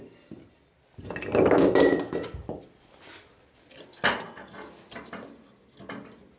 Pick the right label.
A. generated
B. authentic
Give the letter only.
B